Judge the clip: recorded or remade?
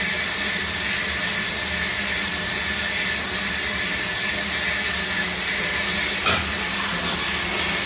recorded